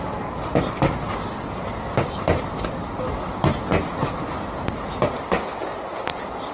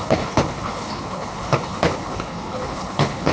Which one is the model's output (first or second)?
second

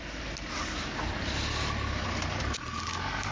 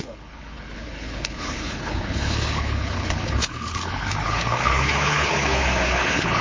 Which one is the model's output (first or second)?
second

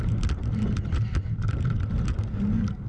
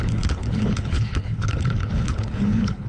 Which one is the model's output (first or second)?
second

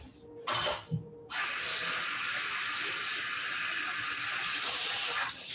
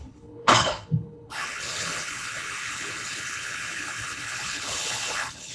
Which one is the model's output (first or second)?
second